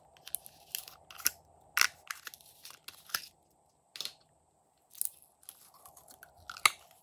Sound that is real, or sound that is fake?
real